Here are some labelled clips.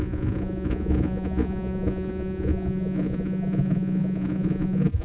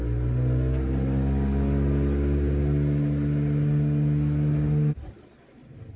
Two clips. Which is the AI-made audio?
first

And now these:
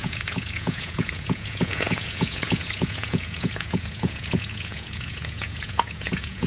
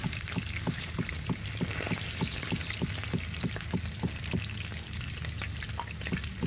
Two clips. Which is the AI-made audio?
first